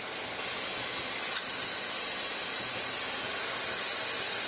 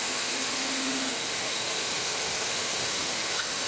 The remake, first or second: second